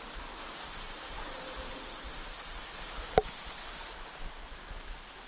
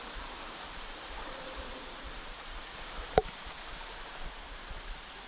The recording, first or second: first